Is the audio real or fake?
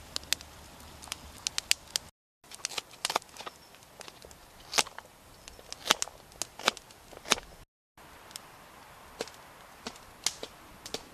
real